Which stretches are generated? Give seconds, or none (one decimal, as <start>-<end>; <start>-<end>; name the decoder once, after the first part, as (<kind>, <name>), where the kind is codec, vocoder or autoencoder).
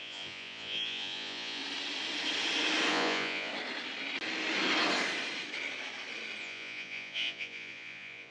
0.0-1.6 (vocoder, Vocos); 2.9-3.5; 6.4-8.3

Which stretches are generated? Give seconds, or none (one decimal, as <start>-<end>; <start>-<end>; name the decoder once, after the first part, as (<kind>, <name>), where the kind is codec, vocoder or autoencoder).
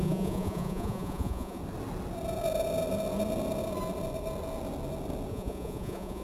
0.0-1.6 (vocoder, Vocos); 5.3-6.2